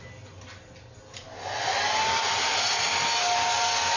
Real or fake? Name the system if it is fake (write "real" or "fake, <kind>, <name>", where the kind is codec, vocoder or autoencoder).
real